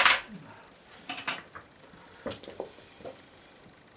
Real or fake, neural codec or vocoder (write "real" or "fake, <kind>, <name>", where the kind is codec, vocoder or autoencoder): real